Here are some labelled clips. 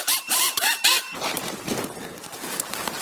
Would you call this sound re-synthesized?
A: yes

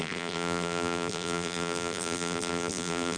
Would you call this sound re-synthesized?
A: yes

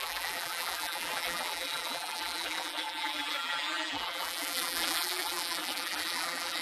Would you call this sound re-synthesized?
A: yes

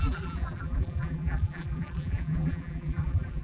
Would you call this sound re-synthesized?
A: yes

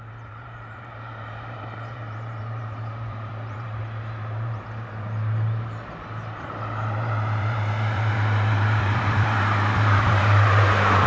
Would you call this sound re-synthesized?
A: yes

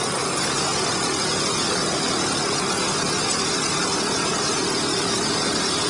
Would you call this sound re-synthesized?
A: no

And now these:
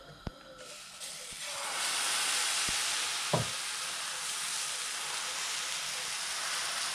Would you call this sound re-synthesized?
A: no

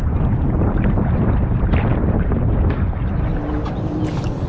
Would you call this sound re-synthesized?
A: yes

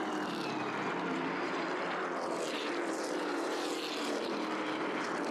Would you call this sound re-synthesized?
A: yes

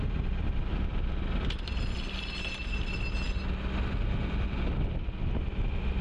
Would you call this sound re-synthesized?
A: no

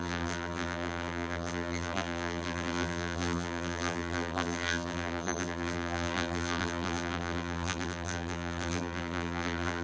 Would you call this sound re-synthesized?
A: yes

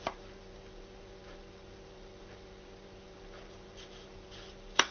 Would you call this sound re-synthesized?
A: yes